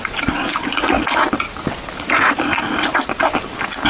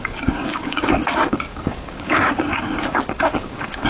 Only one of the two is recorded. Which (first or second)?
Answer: first